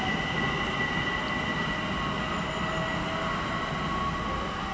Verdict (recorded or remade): recorded